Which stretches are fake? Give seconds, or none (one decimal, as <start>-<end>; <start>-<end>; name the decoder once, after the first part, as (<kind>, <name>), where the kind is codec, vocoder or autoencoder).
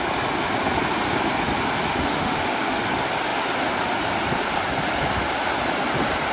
1.9-2.8 (autoencoder, DAC-VAE)